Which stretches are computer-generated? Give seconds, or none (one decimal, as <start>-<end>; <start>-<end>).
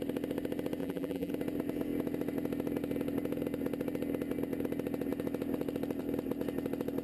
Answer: 0.8-1.3